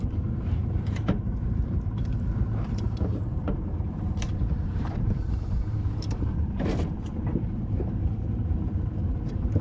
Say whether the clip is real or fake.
fake